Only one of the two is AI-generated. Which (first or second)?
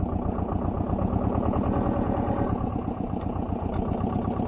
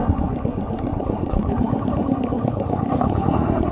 second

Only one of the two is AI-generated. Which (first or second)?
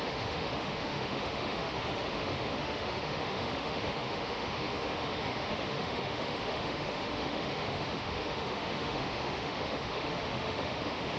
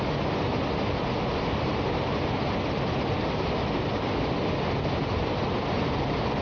first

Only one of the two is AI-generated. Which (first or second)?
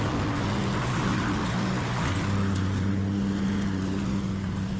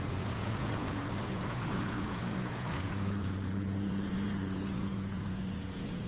second